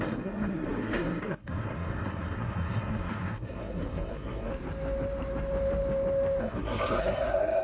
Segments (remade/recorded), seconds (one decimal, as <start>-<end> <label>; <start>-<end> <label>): 0.0-4.5 remade; 4.5-6.4 recorded; 6.4-7.6 remade